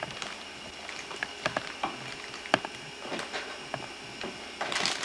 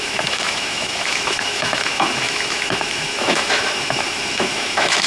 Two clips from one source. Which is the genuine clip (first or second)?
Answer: first